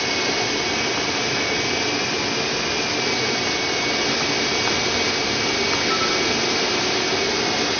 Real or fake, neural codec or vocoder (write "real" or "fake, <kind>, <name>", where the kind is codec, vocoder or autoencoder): real